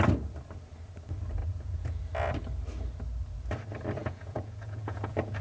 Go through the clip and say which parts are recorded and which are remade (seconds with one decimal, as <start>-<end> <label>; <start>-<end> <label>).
0.0-1.4 recorded; 1.4-2.0 remade; 2.0-4.0 recorded; 4.0-5.4 remade

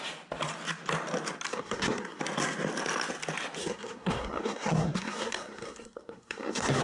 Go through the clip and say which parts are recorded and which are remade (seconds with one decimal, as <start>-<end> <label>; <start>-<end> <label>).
0.0-1.5 recorded; 1.5-2.2 remade; 2.2-3.6 recorded; 3.6-6.8 remade

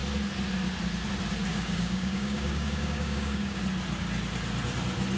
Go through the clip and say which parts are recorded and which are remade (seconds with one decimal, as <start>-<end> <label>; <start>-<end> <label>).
0.0-1.5 recorded; 1.5-3.6 remade; 3.6-5.2 recorded

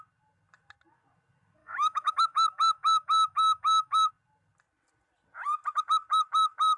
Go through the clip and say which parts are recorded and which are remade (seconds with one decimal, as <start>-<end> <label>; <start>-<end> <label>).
0.0-1.6 recorded; 1.6-4.1 remade; 4.1-6.8 recorded